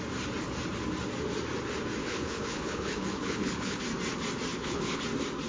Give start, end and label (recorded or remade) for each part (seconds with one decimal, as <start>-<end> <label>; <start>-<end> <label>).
0.0-2.0 recorded; 2.0-3.8 remade; 3.8-4.5 recorded; 4.5-5.0 remade; 5.0-5.5 recorded

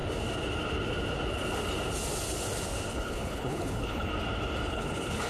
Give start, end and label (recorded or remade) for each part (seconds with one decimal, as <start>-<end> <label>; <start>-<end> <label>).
0.0-2.9 recorded; 2.9-4.1 remade; 4.1-4.7 recorded; 4.7-5.3 remade

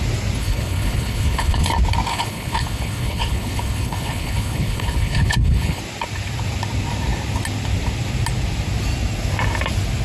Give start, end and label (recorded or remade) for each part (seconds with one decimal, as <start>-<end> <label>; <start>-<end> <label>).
0.0-0.4 recorded; 0.4-1.7 remade; 1.7-2.1 recorded; 2.1-5.8 remade; 5.8-10.0 recorded